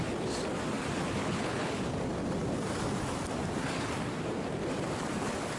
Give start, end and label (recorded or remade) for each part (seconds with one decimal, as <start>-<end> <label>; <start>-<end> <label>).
0.0-1.2 recorded; 1.2-1.8 remade; 1.8-5.6 recorded